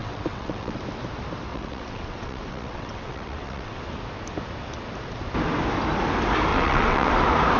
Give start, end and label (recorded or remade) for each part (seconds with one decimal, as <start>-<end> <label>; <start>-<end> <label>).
0.0-0.8 remade; 0.8-1.5 recorded; 1.5-3.8 remade; 3.8-6.5 recorded; 6.5-7.1 remade; 7.1-7.6 recorded